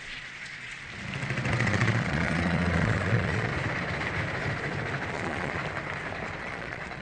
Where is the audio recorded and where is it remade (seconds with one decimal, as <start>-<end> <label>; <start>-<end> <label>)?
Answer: 0.0-0.7 remade; 0.7-1.6 recorded; 1.6-3.5 remade; 3.5-5.1 recorded; 5.1-5.6 remade; 5.6-6.4 recorded; 6.4-7.0 remade